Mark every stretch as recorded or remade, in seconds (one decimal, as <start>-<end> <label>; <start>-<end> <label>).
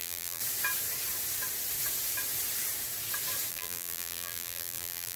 0.0-0.4 remade; 0.4-3.5 recorded; 3.5-5.2 remade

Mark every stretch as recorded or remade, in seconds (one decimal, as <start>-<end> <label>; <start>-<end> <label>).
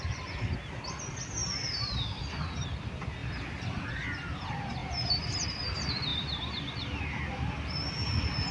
0.0-3.2 recorded; 3.2-3.9 remade; 3.9-4.8 recorded; 4.8-5.5 remade; 5.5-6.1 recorded; 6.1-7.0 remade; 7.0-8.5 recorded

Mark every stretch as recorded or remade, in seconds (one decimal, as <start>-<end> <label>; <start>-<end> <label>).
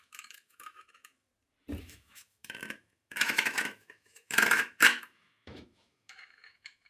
0.0-1.3 remade; 1.3-1.8 recorded; 1.8-6.9 remade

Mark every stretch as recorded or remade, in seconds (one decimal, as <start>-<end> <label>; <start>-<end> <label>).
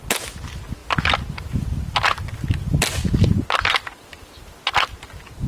0.0-5.5 recorded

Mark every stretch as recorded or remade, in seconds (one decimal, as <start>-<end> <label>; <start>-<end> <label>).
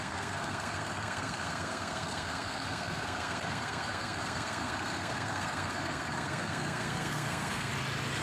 0.0-7.7 remade; 7.7-8.2 recorded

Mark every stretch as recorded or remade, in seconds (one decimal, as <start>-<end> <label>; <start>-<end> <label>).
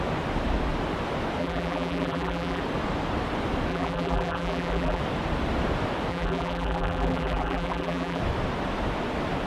0.0-1.4 recorded; 1.4-2.6 remade; 2.6-3.7 recorded; 3.7-5.0 remade; 5.0-6.1 recorded; 6.1-8.2 remade; 8.2-9.5 recorded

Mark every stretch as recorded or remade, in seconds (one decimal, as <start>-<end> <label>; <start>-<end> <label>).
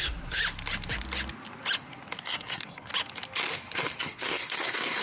0.0-0.4 remade; 0.4-2.2 recorded; 2.2-2.9 remade; 2.9-4.0 recorded; 4.0-5.0 remade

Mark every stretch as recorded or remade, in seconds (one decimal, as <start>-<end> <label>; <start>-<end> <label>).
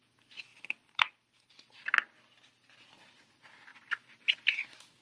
0.0-5.0 recorded